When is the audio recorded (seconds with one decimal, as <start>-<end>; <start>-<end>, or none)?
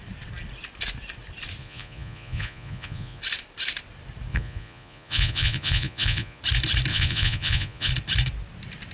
0.0-1.6; 3.2-4.3; 6.4-6.9; 7.9-8.9